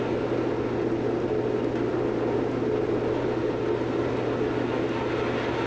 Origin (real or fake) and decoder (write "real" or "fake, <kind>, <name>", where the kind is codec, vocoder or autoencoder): real